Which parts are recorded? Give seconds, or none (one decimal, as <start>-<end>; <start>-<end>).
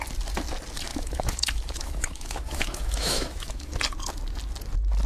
0.0-0.9; 3.8-5.1